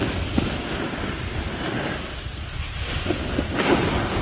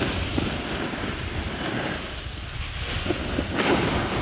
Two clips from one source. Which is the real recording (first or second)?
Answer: first